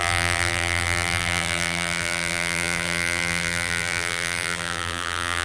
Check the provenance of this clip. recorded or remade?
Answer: remade